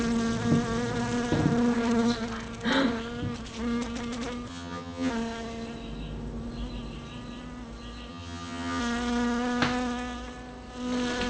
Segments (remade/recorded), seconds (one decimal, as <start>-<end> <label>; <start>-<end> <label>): 0.0-4.5 recorded; 4.5-5.1 remade; 5.1-8.1 recorded; 8.1-8.8 remade; 8.8-11.3 recorded